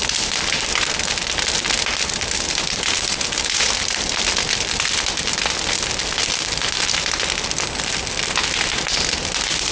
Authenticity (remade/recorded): recorded